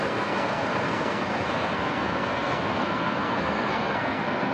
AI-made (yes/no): yes